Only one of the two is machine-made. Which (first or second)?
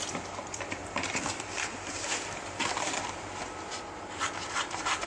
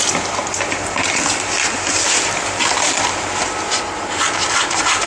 first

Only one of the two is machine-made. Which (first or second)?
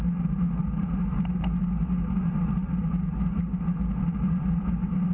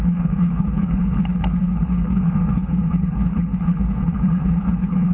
second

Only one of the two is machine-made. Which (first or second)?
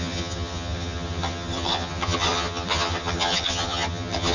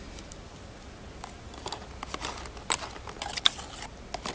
first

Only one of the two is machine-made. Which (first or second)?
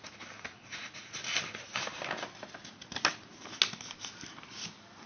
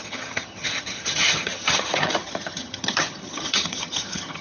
second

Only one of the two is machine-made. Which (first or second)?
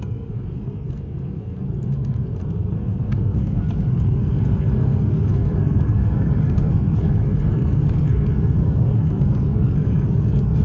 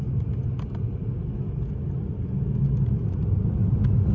first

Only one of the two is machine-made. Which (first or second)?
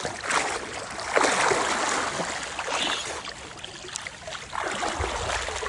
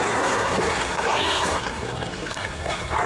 second